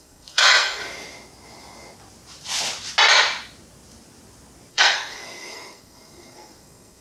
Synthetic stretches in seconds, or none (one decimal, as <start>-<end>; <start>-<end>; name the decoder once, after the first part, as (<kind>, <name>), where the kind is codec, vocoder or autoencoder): 0.0-0.8 (codec, SNAC); 4.7-7.0